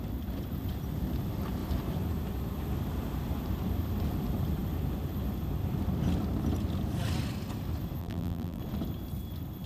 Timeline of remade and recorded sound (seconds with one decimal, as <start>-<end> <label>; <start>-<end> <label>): 0.0-8.0 recorded; 8.0-8.6 remade; 8.6-9.7 recorded

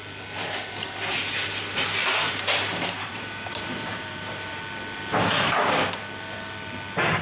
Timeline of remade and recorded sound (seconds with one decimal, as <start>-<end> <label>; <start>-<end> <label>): 0.0-2.0 recorded; 2.0-4.6 remade; 4.6-7.2 recorded

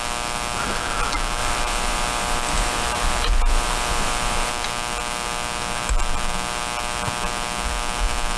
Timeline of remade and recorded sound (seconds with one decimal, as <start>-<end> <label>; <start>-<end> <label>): 0.0-1.4 recorded; 1.4-4.5 remade; 4.5-8.4 recorded

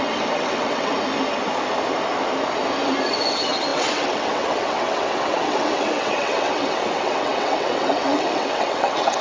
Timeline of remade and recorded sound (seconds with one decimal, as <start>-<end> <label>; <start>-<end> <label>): 0.0-0.9 remade; 0.9-3.3 recorded; 3.3-9.2 remade

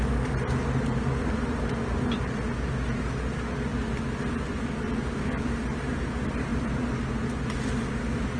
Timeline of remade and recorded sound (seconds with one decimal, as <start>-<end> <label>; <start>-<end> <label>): 0.0-8.4 recorded

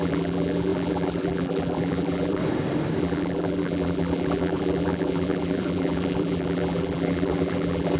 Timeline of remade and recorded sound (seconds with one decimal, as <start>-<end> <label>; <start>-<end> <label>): 0.0-2.4 remade; 2.4-3.0 recorded; 3.0-8.0 remade